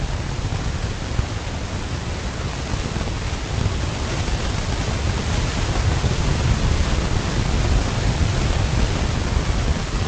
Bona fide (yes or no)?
yes